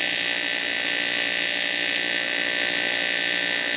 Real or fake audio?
real